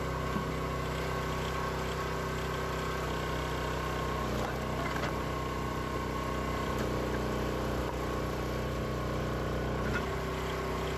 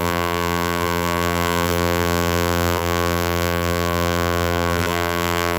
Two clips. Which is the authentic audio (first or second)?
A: first